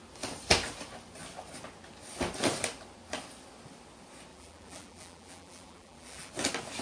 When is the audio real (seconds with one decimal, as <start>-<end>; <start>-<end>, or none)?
0.0-4.3; 6.3-6.8